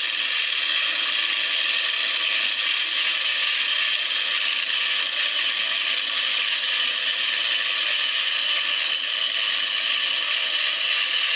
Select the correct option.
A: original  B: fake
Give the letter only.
A